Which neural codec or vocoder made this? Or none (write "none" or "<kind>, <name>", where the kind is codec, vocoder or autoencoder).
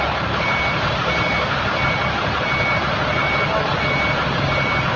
none